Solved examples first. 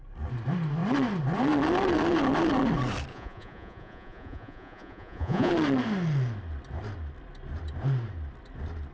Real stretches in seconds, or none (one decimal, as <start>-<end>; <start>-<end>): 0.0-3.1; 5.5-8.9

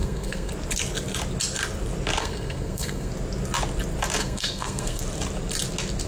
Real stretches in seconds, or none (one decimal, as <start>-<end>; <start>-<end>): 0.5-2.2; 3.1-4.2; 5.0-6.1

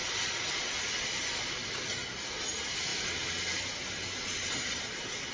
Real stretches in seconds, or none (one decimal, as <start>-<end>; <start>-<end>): 1.4-2.9; 3.9-5.3